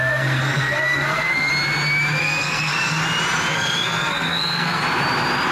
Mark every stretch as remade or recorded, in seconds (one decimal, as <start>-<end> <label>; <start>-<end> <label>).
0.0-1.5 remade; 1.5-2.2 recorded; 2.2-3.0 remade; 3.0-3.5 recorded; 3.5-4.8 remade; 4.8-5.5 recorded